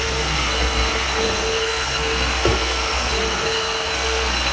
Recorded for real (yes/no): no